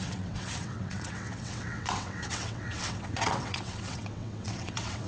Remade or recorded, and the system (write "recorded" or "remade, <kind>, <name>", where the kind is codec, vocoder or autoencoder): remade, vocoder, WaveNeXt